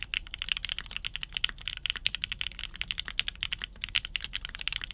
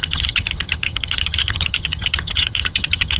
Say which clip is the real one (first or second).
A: first